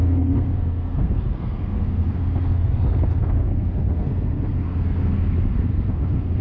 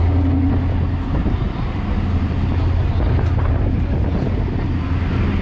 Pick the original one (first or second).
second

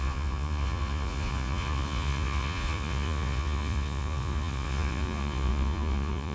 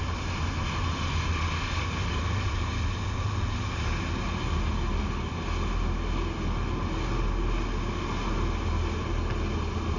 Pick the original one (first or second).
second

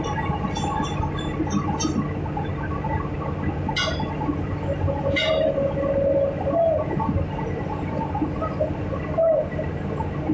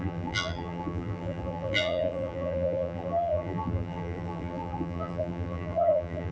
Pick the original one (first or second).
first